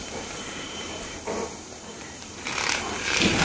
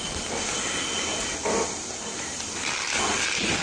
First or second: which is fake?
first